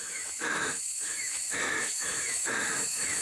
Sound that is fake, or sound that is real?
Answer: fake